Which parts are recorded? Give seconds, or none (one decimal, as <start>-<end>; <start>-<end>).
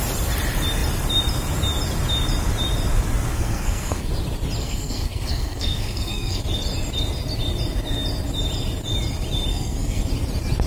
0.0-3.3; 4.1-4.6; 6.4-9.5; 10.0-10.7